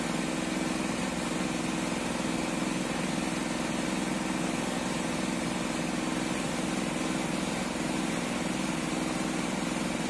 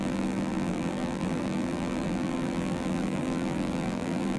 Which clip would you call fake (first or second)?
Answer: second